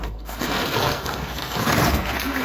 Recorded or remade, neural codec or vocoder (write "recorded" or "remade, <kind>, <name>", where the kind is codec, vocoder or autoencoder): remade, codec, SNAC